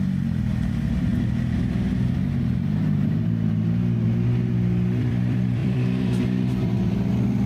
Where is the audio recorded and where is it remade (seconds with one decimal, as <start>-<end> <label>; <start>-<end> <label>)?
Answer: 0.0-1.1 remade; 1.1-5.0 recorded; 5.0-7.5 remade